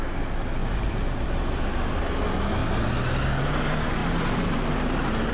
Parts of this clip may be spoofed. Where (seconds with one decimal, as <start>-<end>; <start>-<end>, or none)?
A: 0.6-1.6; 4.0-5.3